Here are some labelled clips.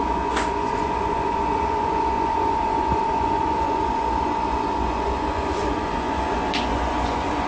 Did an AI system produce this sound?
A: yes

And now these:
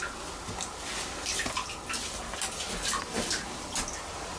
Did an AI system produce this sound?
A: no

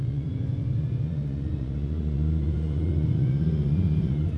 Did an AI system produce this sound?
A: yes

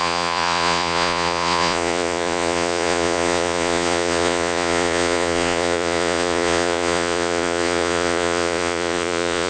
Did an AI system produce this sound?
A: yes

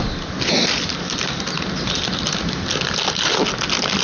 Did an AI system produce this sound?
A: no